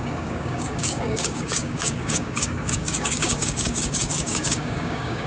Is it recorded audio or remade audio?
remade